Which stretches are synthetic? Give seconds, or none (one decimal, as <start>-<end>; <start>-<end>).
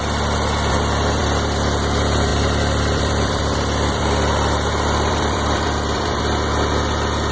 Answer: 2.3-6.2